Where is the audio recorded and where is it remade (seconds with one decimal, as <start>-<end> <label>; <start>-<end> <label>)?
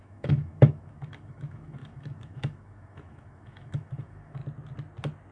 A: 0.0-4.4 remade; 4.4-5.3 recorded